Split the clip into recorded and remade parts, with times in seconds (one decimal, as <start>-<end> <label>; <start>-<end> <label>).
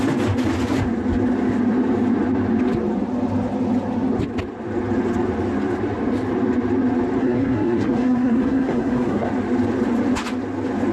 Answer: 0.0-7.2 recorded; 7.2-9.3 remade; 9.3-10.9 recorded